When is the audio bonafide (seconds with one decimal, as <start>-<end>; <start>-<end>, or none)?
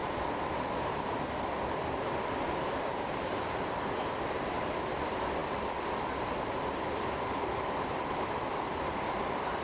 none